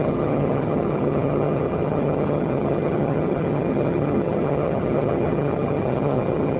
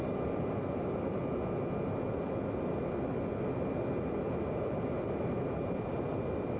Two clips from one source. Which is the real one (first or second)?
second